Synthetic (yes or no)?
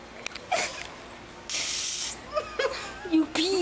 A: no